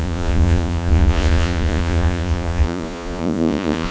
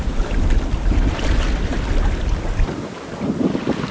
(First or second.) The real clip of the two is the second